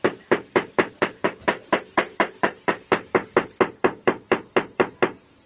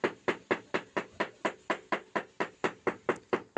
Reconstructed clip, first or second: first